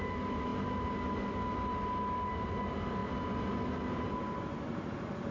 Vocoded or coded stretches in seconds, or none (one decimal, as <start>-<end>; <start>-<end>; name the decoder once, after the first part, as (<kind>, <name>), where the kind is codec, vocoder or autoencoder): none